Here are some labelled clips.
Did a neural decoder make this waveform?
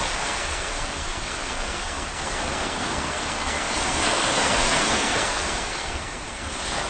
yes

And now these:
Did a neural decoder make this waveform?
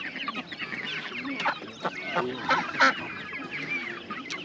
no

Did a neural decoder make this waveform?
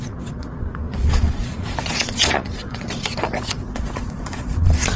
yes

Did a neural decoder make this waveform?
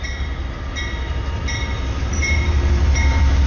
no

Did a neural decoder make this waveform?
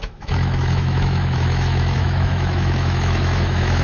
yes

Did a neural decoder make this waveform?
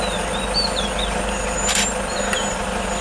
no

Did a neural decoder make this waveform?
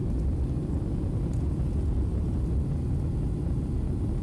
no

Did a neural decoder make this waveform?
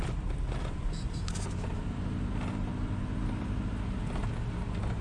no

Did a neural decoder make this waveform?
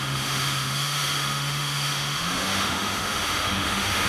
yes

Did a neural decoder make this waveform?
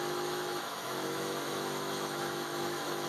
yes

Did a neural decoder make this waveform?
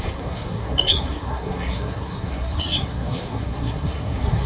yes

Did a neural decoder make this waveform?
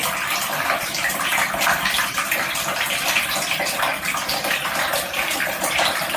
yes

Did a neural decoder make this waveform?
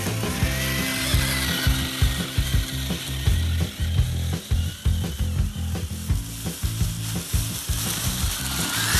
no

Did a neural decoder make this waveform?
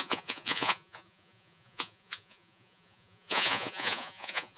yes